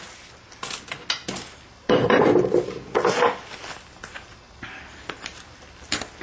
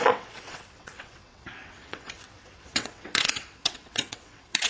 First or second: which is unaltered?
first